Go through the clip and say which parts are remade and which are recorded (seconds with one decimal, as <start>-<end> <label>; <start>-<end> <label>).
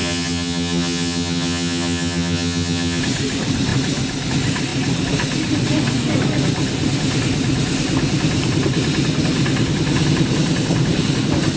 0.0-3.0 remade; 3.0-11.6 recorded